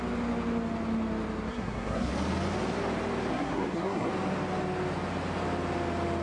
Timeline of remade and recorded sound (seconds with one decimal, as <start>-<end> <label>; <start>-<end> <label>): 0.0-1.5 recorded; 1.5-2.1 remade; 2.1-3.3 recorded; 3.3-4.1 remade; 4.1-6.2 recorded

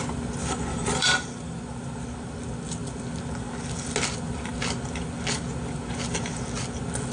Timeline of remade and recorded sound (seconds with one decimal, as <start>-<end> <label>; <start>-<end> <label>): 0.0-0.7 recorded; 0.7-1.6 remade; 1.6-7.1 recorded

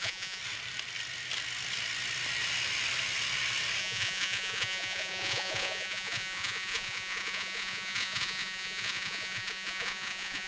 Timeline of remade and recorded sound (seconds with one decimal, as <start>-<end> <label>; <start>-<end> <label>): 0.0-0.4 remade; 0.4-3.8 recorded; 3.8-10.5 remade

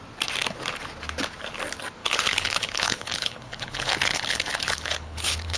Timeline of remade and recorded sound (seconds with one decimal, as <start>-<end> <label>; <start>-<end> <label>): 0.0-2.0 recorded; 2.0-5.6 remade

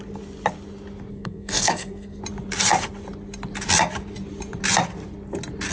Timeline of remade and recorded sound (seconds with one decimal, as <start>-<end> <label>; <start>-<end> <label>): 0.0-1.1 recorded; 1.1-2.2 remade; 2.2-5.7 recorded